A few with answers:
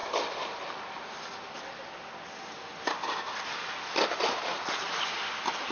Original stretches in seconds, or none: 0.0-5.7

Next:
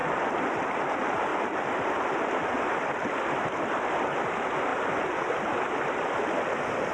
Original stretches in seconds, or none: 0.6-1.3; 3.3-6.9

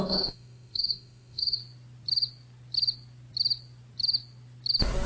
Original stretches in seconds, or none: 1.6-5.1

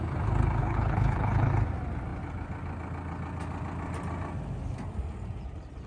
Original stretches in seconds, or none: 0.0-0.6; 1.5-5.9

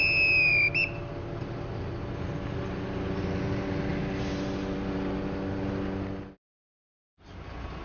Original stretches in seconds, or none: 0.0-7.8